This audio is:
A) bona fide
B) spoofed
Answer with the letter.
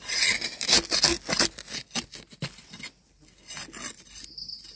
A